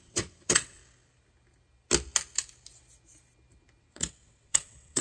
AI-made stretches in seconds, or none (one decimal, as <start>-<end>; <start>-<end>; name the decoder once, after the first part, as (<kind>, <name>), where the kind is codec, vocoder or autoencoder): 0.0-0.8 (vocoder, WaveNeXt); 3.8-5.0